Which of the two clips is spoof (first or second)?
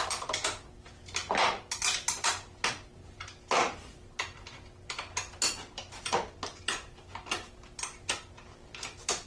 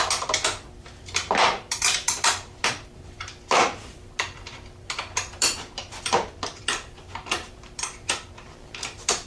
second